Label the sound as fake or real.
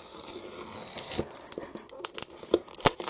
real